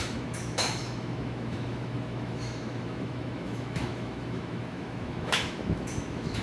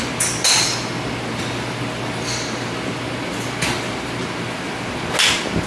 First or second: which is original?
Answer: second